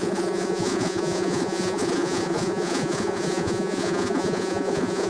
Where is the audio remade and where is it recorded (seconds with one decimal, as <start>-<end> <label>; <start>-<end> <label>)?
0.0-5.1 remade